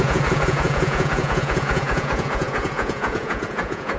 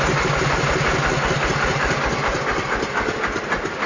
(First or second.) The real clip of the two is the second